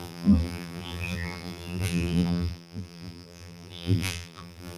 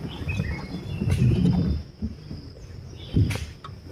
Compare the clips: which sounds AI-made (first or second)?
first